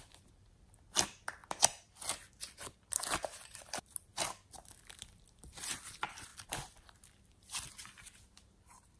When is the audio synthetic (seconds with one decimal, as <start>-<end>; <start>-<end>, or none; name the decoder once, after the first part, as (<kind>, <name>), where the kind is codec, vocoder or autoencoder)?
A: 0.0-9.0 (vocoder, BigVGAN v2)